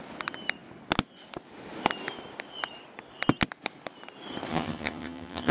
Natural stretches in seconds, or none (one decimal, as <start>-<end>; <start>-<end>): 0.0-4.5